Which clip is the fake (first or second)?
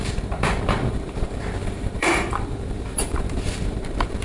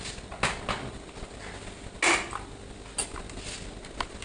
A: first